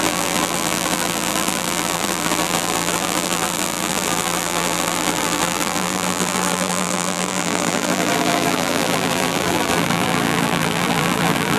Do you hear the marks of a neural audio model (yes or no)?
yes